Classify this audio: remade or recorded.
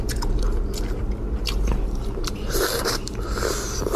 remade